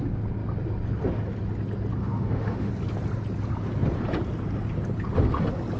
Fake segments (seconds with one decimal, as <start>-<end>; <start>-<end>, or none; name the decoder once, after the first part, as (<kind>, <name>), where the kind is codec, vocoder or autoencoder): 2.0-2.7 (autoencoder, DAC-VAE)